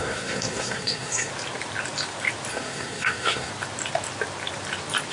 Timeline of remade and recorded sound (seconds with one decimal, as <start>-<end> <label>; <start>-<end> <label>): 0.0-1.3 remade; 1.3-2.5 recorded; 2.5-3.5 remade; 3.5-5.1 recorded